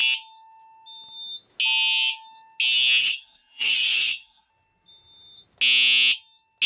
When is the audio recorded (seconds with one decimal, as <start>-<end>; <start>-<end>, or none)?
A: 0.0-3.0; 4.5-6.7